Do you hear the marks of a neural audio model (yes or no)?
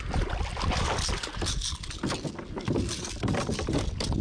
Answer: no